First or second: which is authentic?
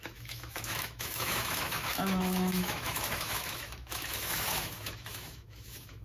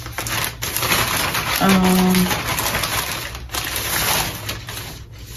second